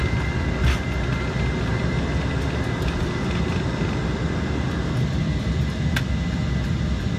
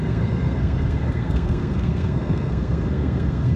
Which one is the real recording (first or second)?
first